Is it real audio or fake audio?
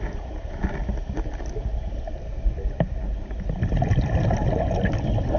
real